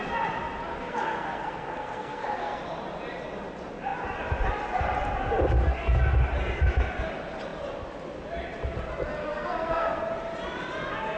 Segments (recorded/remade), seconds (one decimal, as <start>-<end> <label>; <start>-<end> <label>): 0.0-0.7 recorded; 0.7-2.6 remade; 2.6-9.2 recorded; 9.2-10.0 remade; 10.0-11.2 recorded